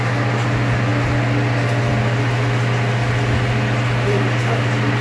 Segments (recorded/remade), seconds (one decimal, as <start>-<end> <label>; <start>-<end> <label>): 0.0-5.0 recorded